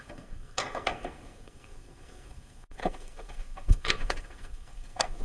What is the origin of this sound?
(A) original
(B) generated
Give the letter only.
B